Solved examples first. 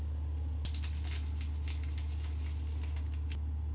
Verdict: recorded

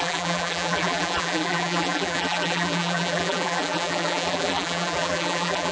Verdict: remade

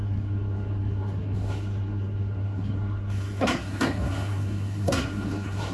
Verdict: remade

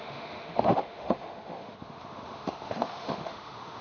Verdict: remade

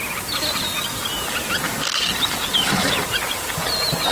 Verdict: recorded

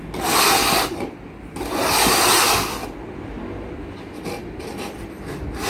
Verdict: recorded